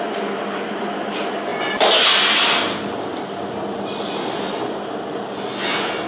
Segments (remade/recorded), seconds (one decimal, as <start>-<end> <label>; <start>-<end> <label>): 0.0-6.1 recorded